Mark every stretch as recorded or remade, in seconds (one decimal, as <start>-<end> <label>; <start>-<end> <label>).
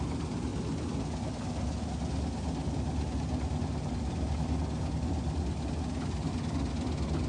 0.0-7.3 recorded